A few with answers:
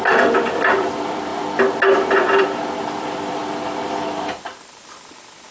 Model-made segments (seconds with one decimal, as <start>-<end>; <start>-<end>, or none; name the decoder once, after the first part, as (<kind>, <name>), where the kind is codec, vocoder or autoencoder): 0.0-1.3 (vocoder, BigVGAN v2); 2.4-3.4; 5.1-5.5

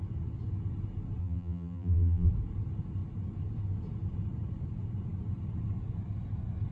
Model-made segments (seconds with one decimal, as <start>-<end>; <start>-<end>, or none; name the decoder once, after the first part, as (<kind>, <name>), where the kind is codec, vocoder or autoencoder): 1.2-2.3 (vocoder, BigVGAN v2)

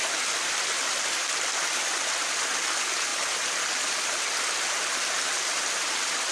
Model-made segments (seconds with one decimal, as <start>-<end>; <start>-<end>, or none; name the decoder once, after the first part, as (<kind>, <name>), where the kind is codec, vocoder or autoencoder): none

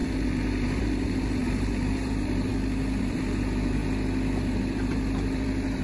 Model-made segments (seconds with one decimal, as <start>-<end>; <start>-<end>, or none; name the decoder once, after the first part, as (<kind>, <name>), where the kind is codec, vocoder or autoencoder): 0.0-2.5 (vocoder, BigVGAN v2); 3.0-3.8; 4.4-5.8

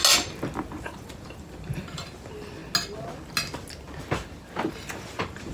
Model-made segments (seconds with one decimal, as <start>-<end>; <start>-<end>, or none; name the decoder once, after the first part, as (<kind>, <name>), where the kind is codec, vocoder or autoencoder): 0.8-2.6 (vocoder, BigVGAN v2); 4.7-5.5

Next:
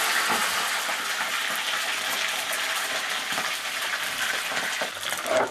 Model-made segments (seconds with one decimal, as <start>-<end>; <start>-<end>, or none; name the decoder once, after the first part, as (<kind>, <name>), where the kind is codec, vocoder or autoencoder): none

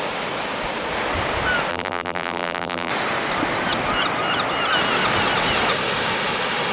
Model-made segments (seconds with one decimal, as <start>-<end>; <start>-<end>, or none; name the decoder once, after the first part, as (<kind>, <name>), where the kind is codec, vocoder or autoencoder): 1.7-2.9 (vocoder, BigVGAN v2)

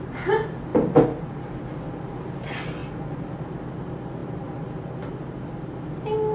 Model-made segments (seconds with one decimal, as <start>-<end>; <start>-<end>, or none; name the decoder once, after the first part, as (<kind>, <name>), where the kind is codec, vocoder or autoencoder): 2.8-3.4 (vocoder, BigVGAN v2); 4.2-5.1